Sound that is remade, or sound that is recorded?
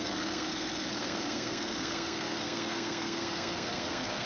remade